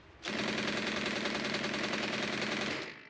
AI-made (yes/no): no